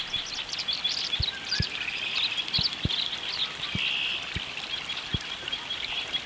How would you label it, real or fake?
real